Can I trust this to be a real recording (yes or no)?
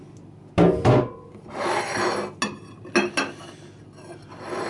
yes